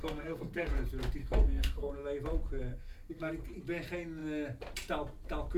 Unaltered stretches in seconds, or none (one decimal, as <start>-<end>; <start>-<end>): 0.7-1.2; 1.9-2.7; 3.3-5.6